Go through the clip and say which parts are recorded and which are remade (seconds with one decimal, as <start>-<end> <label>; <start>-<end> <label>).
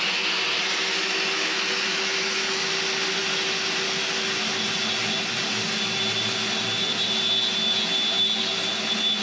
0.0-0.9 recorded; 0.9-2.6 remade; 2.6-9.2 recorded